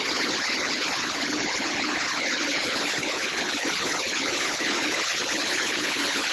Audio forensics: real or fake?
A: fake